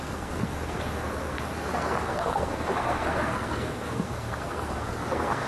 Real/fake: fake